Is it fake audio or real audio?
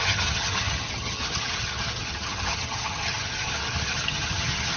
fake